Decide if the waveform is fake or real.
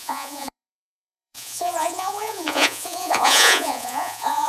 fake